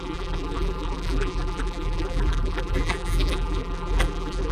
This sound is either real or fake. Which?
fake